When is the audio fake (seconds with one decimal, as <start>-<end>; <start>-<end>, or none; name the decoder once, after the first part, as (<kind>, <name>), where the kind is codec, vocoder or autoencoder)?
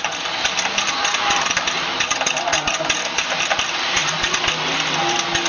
none